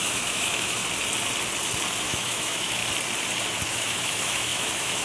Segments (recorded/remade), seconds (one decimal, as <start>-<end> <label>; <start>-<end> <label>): 0.0-0.8 remade; 0.8-2.0 recorded; 2.0-2.8 remade; 2.8-3.7 recorded; 3.7-5.0 remade